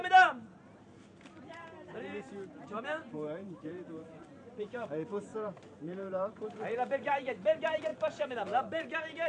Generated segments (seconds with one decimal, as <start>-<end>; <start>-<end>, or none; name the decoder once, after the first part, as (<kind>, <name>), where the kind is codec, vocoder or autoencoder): 0.0-9.3 (vocoder, BigVGAN v2)